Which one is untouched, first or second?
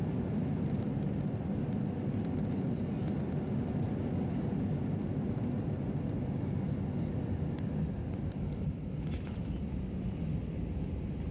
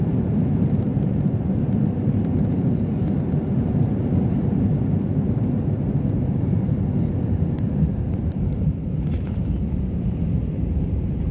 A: first